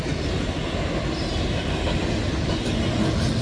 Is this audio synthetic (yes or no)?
no